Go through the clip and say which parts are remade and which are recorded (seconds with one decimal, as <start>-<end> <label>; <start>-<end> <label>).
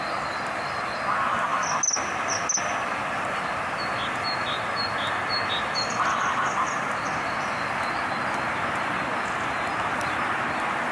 0.0-10.9 recorded